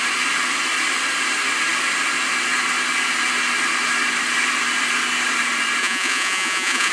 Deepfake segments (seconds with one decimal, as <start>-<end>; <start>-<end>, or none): 5.8-6.9